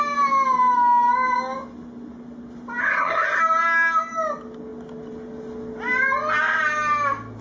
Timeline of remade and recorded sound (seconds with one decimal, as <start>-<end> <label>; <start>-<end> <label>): 0.0-2.8 recorded; 2.8-3.4 remade; 3.4-7.4 recorded